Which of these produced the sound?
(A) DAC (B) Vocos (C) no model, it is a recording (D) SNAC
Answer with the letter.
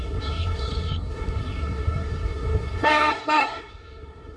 D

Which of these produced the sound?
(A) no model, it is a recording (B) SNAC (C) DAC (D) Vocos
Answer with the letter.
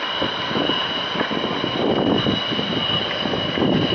A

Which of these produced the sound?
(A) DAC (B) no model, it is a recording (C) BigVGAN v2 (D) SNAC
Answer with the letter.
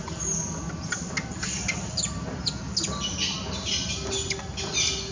B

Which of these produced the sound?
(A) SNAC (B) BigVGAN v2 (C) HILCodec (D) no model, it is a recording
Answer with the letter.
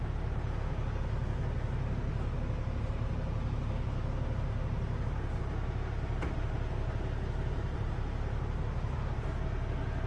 D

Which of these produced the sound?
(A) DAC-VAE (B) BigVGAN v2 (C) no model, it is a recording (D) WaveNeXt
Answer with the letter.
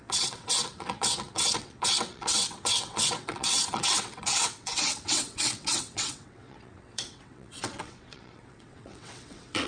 D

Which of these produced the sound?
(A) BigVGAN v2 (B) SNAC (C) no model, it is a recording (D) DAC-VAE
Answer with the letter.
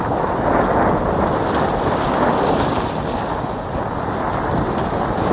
C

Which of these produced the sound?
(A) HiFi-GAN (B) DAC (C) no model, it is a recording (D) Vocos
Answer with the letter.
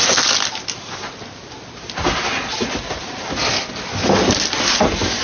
C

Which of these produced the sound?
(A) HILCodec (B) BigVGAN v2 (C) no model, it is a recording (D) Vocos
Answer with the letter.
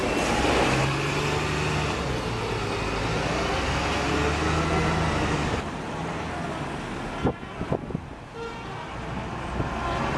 C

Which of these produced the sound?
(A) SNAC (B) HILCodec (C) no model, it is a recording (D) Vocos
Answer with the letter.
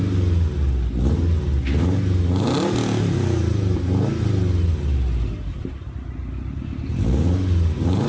C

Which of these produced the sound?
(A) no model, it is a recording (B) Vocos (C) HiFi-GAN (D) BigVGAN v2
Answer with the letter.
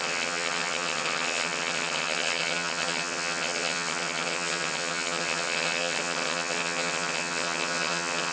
C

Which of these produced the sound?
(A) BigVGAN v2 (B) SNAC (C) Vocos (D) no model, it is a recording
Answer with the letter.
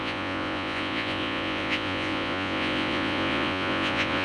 C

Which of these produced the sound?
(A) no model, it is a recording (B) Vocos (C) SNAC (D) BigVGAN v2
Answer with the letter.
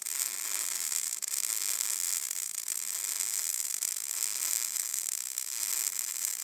A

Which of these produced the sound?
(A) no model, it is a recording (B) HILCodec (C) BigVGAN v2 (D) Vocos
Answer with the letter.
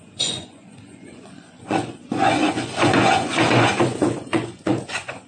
D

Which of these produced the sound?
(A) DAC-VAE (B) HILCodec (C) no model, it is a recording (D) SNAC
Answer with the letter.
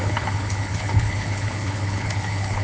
B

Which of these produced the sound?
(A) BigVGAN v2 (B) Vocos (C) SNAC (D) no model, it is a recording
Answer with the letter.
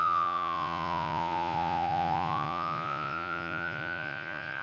B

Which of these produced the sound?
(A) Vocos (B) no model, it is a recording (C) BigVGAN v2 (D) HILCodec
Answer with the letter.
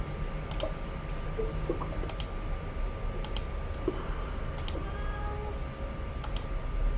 B